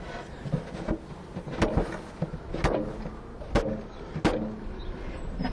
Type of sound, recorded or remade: recorded